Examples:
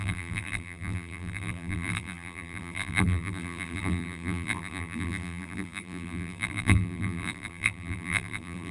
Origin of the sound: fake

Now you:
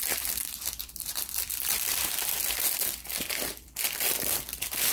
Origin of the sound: fake